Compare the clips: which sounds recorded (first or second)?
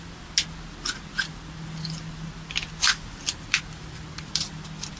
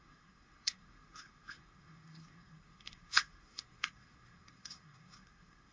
first